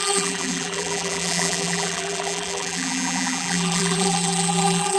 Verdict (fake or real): fake